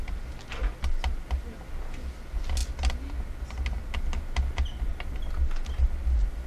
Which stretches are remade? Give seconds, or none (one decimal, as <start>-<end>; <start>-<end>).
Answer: none